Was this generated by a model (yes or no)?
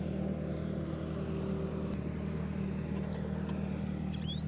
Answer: no